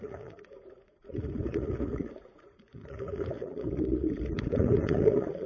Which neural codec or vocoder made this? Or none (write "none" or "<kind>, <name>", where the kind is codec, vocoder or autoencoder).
vocoder, Vocos